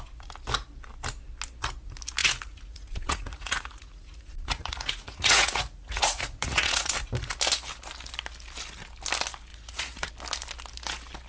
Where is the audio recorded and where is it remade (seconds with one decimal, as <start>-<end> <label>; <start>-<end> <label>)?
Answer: 0.0-2.2 recorded; 2.2-6.9 remade; 6.9-9.5 recorded; 9.5-10.1 remade; 10.1-11.3 recorded